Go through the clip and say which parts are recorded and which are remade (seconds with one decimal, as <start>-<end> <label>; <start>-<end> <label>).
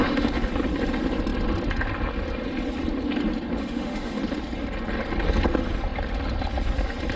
0.0-0.5 remade; 0.5-3.6 recorded; 3.6-4.2 remade; 4.2-7.2 recorded